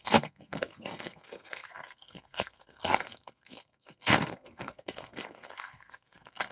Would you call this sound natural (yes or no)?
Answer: no